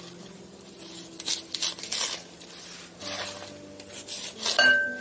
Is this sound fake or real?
real